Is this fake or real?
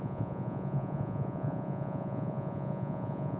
fake